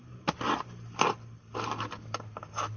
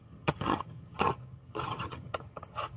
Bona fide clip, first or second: first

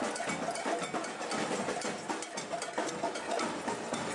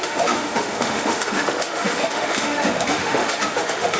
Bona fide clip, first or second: first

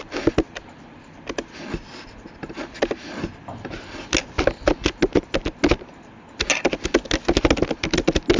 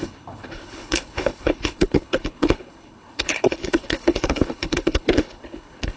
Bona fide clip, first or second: first